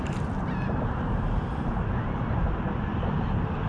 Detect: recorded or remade recorded